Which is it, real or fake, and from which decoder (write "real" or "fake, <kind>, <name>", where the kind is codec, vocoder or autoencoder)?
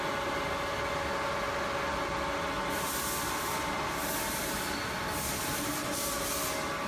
real